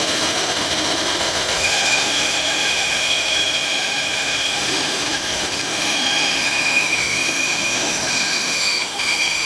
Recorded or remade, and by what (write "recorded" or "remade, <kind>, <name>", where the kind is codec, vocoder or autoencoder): remade, autoencoder, DAC-VAE